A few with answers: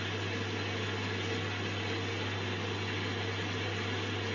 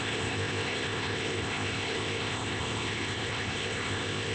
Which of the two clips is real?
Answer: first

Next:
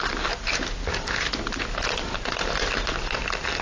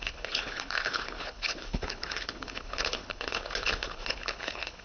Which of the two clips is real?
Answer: first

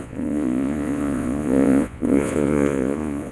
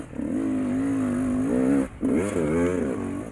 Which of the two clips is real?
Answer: second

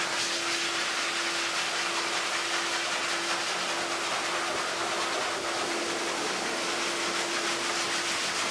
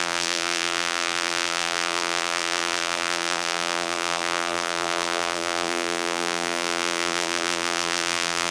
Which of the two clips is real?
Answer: first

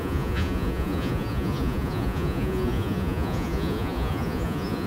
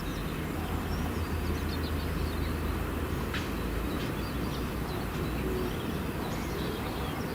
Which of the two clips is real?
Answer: second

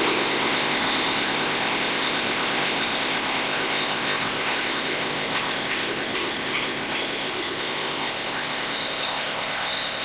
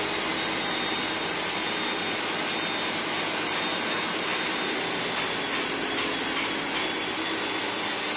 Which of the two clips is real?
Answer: second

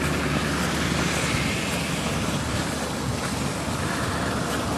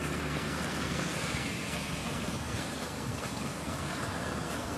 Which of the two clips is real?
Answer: first